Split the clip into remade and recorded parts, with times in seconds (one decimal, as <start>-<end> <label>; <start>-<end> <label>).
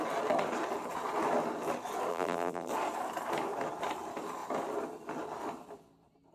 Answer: 0.0-2.1 recorded; 2.1-2.7 remade; 2.7-6.3 recorded